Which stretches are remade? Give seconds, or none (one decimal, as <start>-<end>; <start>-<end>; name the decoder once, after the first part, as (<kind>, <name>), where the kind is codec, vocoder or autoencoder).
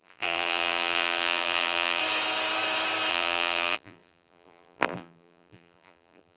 0.0-2.0 (vocoder, BigVGAN v2); 3.1-6.4